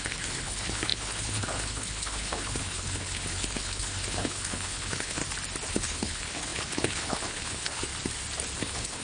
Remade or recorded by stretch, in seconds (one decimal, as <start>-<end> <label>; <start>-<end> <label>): 0.0-5.2 remade; 5.2-5.7 recorded; 5.7-7.9 remade; 7.9-8.6 recorded; 8.6-9.0 remade